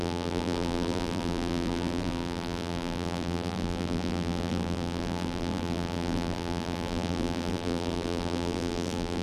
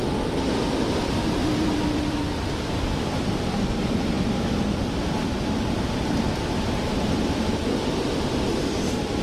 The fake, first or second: first